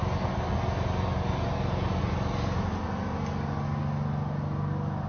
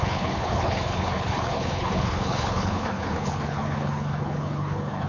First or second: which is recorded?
first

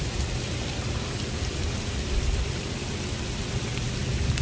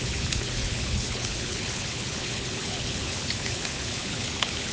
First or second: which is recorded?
first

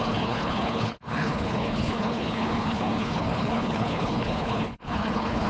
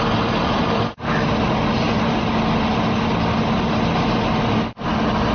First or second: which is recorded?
second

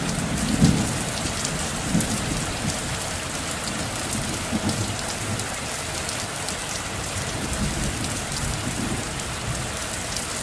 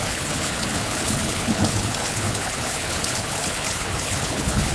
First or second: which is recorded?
first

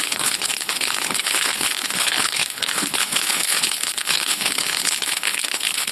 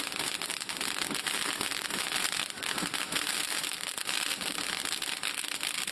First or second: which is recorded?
second